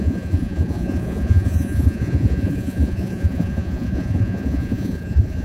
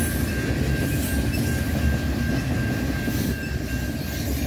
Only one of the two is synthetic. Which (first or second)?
first